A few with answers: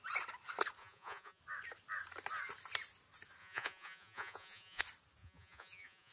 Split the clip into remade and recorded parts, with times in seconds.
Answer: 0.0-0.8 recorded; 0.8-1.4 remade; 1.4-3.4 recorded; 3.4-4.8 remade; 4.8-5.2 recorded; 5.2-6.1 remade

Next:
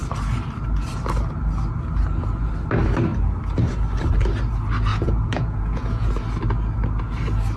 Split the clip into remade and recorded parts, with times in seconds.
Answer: 0.0-4.9 recorded; 4.9-6.1 remade; 6.1-7.6 recorded

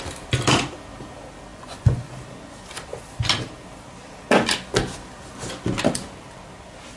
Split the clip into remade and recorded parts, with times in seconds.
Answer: 0.0-1.5 recorded; 1.5-2.1 remade; 2.1-7.0 recorded

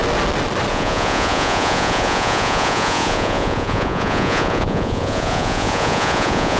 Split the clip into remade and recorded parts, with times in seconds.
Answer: 0.0-0.7 recorded; 0.7-6.6 remade

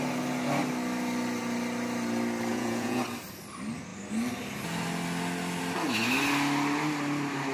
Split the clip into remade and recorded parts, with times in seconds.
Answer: 0.0-2.5 recorded; 2.5-3.0 remade; 3.0-7.5 recorded

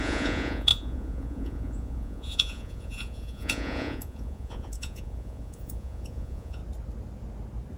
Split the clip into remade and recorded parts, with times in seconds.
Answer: 0.0-6.6 remade; 6.6-7.8 recorded

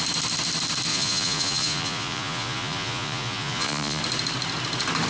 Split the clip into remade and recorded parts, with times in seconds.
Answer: 0.0-0.9 recorded; 0.9-4.0 remade; 4.0-5.1 recorded